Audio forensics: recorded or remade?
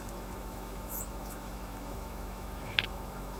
remade